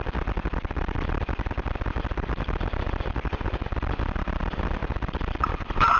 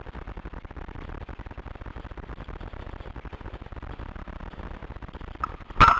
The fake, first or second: first